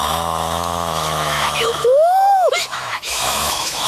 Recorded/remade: remade